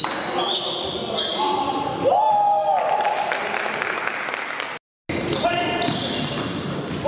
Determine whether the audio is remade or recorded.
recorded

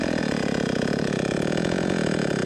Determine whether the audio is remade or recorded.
remade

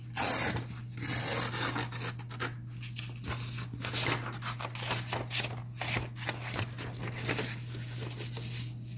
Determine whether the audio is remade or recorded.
recorded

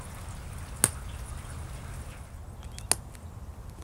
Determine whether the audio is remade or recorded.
recorded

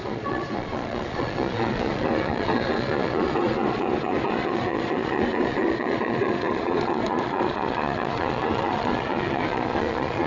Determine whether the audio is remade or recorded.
remade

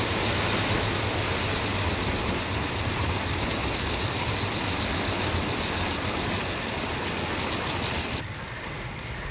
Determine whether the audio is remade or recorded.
recorded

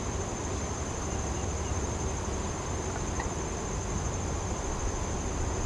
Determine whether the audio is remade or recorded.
recorded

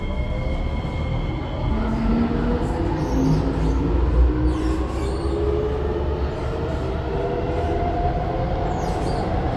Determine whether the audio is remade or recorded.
recorded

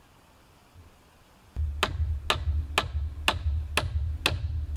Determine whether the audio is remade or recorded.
recorded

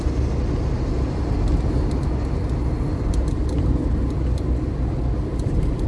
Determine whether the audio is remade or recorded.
recorded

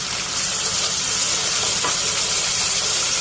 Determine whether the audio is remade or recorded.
recorded